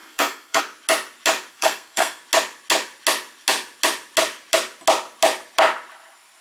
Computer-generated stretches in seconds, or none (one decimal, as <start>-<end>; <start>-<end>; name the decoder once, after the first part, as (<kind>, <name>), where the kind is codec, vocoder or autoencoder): 0.0-0.6 (codec, SNAC); 1.5-2.2